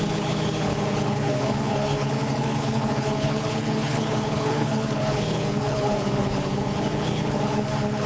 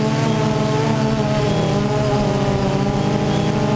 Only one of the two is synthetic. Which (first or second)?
first